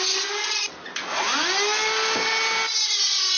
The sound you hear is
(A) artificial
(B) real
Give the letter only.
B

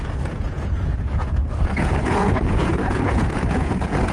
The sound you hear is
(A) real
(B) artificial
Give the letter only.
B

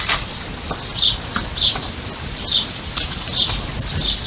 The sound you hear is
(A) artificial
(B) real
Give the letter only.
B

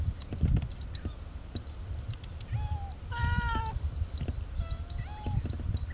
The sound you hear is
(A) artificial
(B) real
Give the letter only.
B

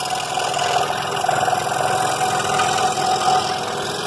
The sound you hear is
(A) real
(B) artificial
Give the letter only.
A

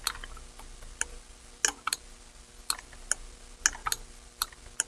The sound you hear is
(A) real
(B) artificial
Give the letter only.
A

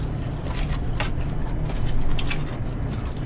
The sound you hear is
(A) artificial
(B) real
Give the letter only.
B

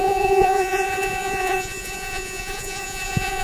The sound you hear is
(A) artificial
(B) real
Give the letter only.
A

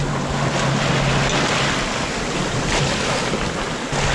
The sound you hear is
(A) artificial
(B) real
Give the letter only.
B